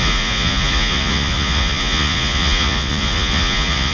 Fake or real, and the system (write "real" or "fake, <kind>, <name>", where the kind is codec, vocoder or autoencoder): fake, vocoder, Vocos